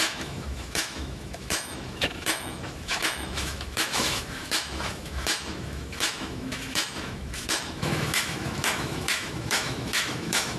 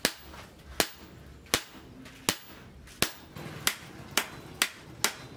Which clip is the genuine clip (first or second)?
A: second